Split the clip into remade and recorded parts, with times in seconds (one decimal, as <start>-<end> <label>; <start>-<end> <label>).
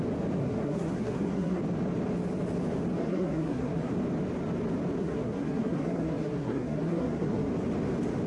0.0-0.4 recorded; 0.4-1.6 remade; 1.6-3.0 recorded; 3.0-3.9 remade; 3.9-5.0 recorded; 5.0-7.5 remade; 7.5-8.3 recorded